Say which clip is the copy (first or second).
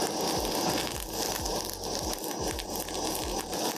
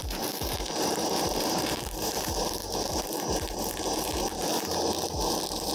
second